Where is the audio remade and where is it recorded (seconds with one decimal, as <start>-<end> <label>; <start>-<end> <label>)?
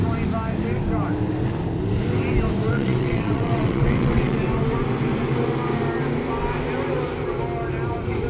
0.0-2.7 recorded; 2.7-4.4 remade; 4.4-8.3 recorded